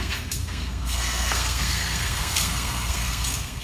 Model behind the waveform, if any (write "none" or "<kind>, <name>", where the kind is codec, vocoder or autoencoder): codec, SNAC